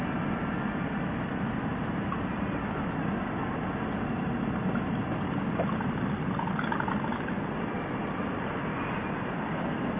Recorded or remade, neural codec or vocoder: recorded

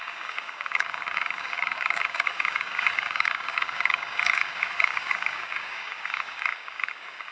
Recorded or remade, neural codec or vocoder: remade, codec, DAC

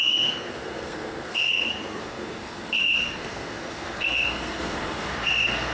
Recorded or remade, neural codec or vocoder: remade, codec, SNAC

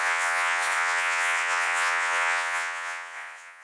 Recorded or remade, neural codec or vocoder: remade, vocoder, Vocos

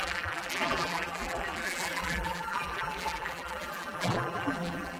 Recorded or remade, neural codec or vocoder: remade, vocoder, BigVGAN v2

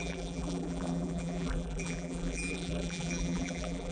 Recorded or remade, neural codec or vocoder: remade, vocoder, BigVGAN v2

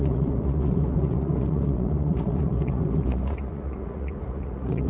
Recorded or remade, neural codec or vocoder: remade, vocoder, Vocos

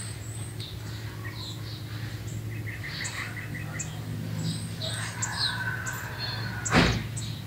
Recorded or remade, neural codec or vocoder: recorded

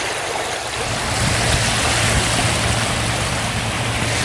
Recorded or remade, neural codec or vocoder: recorded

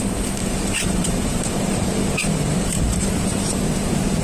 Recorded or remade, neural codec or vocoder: remade, vocoder, BigVGAN v2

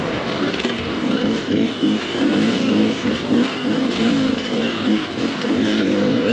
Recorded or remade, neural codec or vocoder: remade, codec, DAC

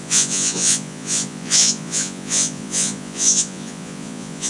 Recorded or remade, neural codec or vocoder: remade, vocoder, Vocos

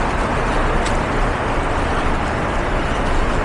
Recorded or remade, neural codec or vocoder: recorded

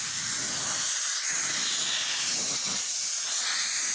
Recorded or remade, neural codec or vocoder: recorded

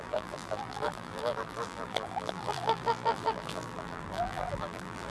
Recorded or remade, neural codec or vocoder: remade, vocoder, BigVGAN v2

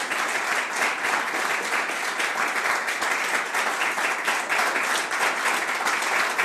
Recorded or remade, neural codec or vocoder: recorded